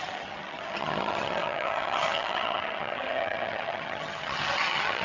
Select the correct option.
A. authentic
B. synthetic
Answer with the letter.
B